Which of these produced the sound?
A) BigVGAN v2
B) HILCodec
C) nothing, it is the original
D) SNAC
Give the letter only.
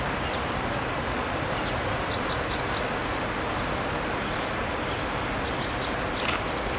C